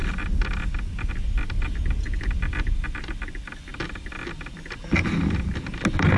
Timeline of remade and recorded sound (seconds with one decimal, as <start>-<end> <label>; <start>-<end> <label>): 0.0-6.2 recorded